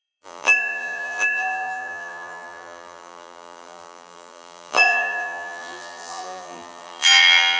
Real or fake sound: fake